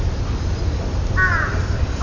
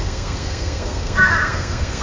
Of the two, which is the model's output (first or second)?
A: second